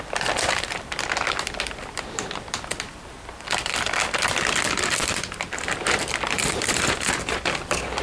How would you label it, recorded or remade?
remade